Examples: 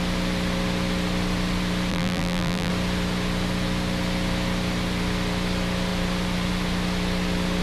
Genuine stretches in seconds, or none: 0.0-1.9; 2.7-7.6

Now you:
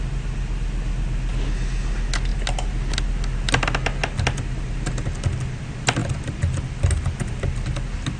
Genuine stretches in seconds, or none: 0.0-8.2

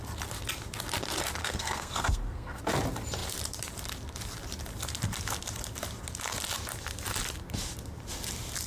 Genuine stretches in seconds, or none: 0.0-1.4; 2.6-8.7

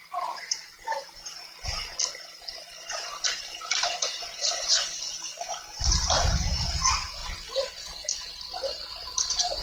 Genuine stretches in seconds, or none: 1.8-3.8; 7.2-8.9

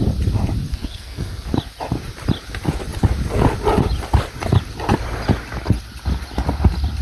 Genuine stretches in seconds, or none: 0.0-0.7; 1.5-7.0

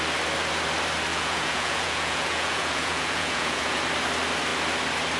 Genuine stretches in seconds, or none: 0.0-1.1; 3.8-5.2

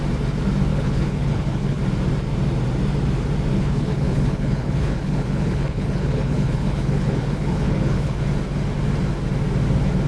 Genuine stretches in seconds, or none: 0.0-0.7; 1.8-3.5; 8.2-10.1

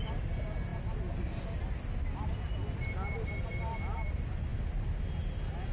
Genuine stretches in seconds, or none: 0.0-5.7